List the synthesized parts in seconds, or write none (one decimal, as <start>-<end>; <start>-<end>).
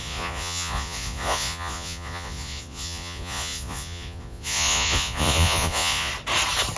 0.0-6.1